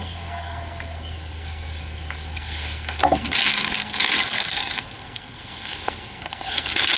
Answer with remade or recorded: remade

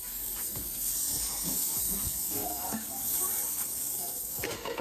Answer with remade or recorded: remade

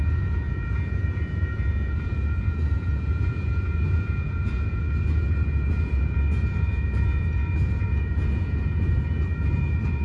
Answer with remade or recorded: remade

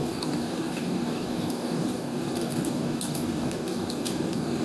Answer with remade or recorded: remade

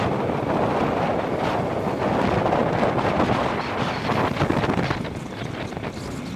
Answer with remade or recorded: recorded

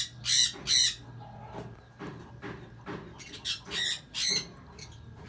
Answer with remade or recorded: recorded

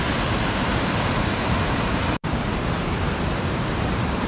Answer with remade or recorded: remade